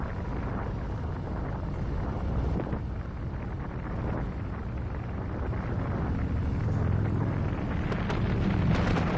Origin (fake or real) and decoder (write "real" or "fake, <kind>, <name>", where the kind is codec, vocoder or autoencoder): real